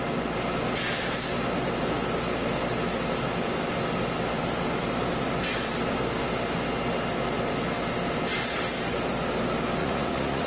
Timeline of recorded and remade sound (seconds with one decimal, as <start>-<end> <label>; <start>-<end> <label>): 0.0-9.8 recorded; 9.8-10.5 remade